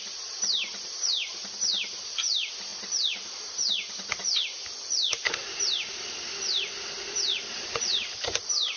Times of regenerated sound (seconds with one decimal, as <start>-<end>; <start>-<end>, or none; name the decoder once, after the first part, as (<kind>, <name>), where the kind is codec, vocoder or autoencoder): 0.0-2.7 (vocoder, BigVGAN v2); 7.7-8.8